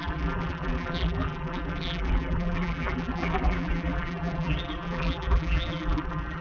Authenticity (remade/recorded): remade